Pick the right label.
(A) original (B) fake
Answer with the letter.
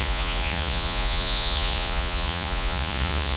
B